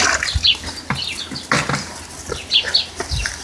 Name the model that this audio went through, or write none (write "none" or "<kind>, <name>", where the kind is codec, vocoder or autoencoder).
none